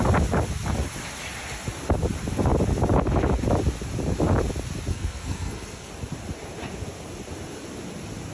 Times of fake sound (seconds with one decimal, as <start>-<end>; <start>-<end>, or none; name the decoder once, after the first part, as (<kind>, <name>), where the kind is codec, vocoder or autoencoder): 4.9-5.9 (codec, SNAC)